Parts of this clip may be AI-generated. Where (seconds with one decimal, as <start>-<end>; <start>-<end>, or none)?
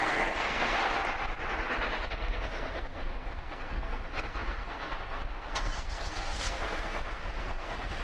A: 0.0-1.0; 2.1-8.0